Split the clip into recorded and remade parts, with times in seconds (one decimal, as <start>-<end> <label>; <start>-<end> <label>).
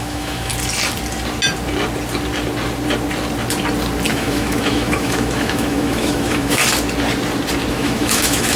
0.0-0.5 remade; 0.5-4.1 recorded; 4.1-6.6 remade; 6.6-7.7 recorded; 7.7-8.6 remade